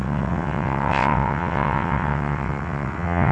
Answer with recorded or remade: remade